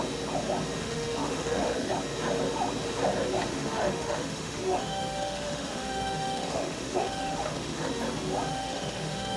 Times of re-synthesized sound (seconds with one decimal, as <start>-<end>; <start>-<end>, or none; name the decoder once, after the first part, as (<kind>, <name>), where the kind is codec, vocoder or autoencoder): 0.8-1.9 (autoencoder, DAC-VAE); 3.5-7.9; 8.5-9.4